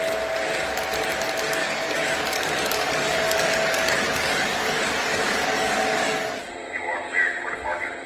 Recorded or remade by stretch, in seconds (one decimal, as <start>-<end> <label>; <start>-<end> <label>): 0.0-1.6 recorded; 1.6-6.4 remade; 6.4-8.1 recorded